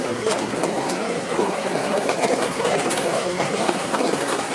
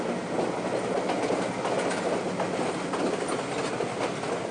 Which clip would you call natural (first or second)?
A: second